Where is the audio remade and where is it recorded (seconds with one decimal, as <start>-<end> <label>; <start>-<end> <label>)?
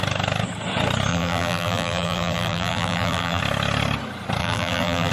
0.0-1.1 recorded; 1.1-3.4 remade; 3.4-4.4 recorded; 4.4-5.1 remade